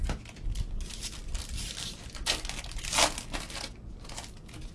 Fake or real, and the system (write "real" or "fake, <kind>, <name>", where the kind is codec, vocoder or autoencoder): real